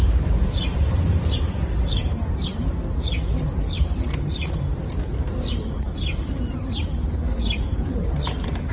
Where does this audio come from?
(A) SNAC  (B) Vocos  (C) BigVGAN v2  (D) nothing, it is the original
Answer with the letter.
C